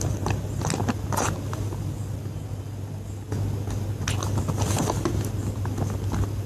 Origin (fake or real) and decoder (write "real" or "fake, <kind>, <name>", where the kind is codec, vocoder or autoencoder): real